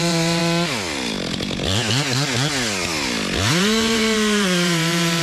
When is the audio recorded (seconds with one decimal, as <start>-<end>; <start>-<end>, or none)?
0.4-3.5

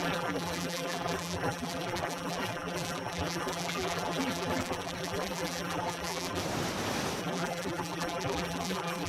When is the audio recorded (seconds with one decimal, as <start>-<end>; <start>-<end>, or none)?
6.4-7.2

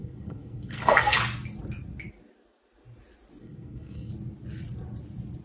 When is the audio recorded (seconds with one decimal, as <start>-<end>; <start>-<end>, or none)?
1.2-3.4; 4.1-5.4

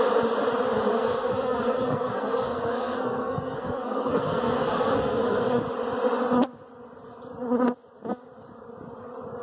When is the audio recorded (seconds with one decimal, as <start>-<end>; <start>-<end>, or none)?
0.0-0.9; 5.6-9.4

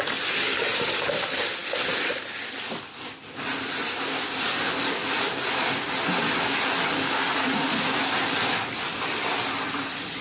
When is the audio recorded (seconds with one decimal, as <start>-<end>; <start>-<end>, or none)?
0.0-7.3; 7.8-10.2